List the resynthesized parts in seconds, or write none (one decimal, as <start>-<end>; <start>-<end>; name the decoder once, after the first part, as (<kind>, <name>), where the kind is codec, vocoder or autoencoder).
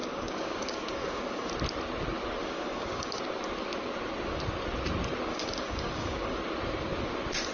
0.0-1.5 (codec, DAC); 2.4-3.2; 5.3-6.4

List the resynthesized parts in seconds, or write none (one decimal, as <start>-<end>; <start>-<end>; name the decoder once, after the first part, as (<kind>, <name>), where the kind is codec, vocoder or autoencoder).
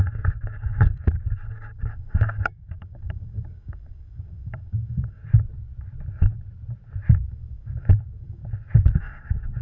0.0-5.2 (codec, DAC); 7.3-8.4; 9.0-9.6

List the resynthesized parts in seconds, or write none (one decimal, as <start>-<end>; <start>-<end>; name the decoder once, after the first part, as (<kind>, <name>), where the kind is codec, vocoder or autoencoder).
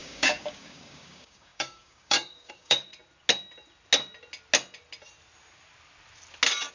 0.0-2.9 (codec, DAC)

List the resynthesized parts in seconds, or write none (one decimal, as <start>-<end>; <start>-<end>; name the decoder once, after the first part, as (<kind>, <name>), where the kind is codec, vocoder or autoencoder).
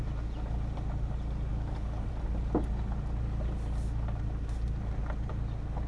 1.5-2.1 (codec, DAC)